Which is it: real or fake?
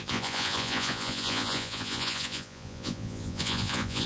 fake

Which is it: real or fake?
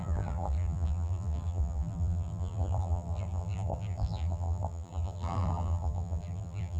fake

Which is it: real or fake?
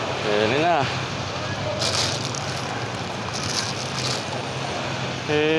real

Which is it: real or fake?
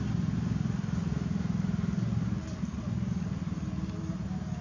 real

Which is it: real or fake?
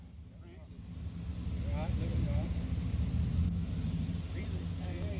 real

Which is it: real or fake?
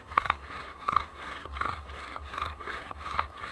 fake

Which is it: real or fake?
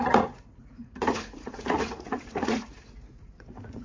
fake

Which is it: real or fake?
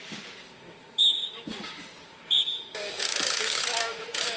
fake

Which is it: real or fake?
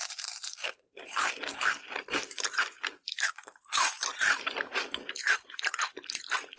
fake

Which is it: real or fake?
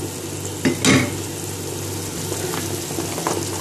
real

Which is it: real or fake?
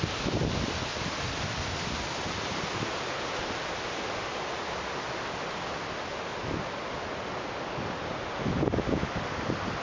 real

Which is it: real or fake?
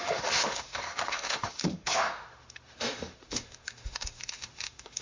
fake